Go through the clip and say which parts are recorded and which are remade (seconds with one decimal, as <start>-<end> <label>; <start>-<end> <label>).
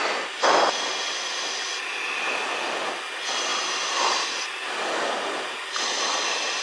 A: 0.0-6.6 recorded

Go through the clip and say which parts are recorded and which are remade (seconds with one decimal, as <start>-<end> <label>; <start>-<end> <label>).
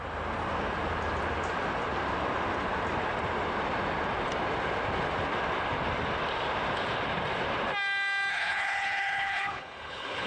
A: 0.0-8.3 recorded; 8.3-10.3 remade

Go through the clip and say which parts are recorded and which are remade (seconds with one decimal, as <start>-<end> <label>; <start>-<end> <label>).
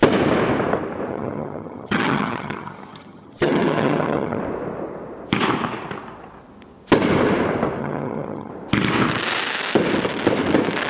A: 0.0-1.1 recorded; 1.1-4.4 remade; 4.4-7.8 recorded; 7.8-8.5 remade; 8.5-10.9 recorded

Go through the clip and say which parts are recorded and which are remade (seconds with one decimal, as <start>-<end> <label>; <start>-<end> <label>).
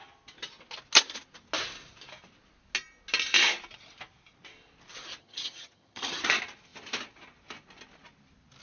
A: 0.0-5.2 recorded; 5.2-6.2 remade; 6.2-8.6 recorded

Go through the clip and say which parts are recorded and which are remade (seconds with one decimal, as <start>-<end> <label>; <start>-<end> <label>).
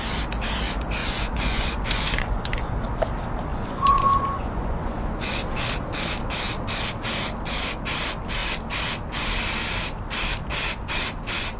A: 0.0-1.0 recorded; 1.0-2.7 remade; 2.7-3.5 recorded; 3.5-5.4 remade; 5.4-11.6 recorded